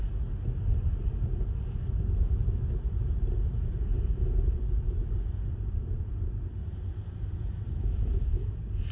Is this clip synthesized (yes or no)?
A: no